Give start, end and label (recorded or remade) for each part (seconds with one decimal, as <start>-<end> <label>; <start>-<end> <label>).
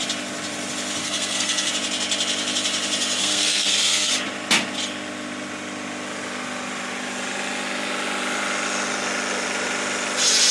0.0-1.0 recorded; 1.0-1.7 remade; 1.7-3.2 recorded; 3.2-4.1 remade; 4.1-10.5 recorded